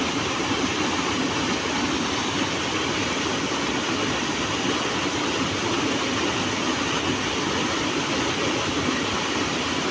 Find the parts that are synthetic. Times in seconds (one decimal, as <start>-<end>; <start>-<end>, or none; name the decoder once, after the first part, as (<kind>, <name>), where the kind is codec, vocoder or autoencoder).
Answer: none